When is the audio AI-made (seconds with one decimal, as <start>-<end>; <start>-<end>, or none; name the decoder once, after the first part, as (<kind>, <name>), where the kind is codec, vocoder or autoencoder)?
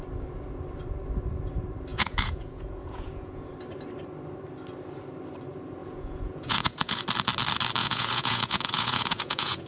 1.9-3.5 (vocoder, Vocos); 5.8-7.0; 7.8-9.7